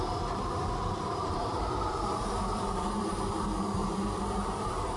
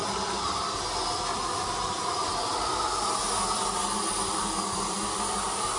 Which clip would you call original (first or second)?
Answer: second